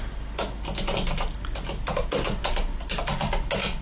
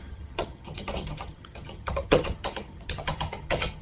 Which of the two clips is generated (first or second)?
second